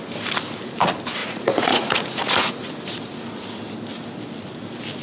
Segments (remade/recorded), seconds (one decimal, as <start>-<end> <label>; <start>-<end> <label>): 0.0-1.2 recorded; 1.2-2.7 remade; 2.7-5.0 recorded